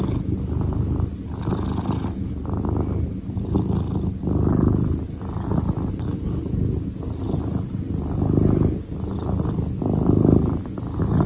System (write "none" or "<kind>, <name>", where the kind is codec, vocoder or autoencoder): none